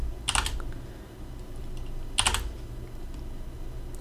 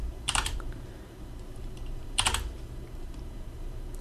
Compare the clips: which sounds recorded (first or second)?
first